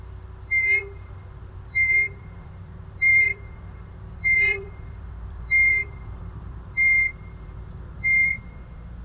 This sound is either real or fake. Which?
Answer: fake